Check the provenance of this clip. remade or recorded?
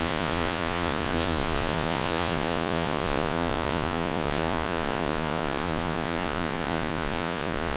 remade